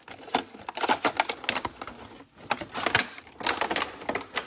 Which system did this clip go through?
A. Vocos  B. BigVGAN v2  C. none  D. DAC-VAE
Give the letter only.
C